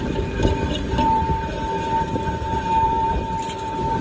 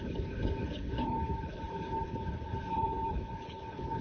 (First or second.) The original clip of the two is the first